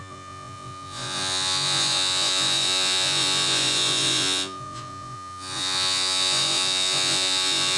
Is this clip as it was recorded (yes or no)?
no